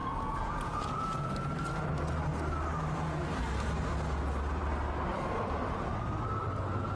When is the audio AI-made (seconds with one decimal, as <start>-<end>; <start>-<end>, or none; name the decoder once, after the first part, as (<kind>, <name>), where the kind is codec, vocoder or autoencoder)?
0.0-1.3 (vocoder, Vocos)